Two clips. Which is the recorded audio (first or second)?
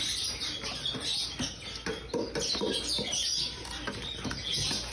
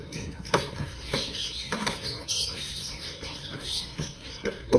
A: first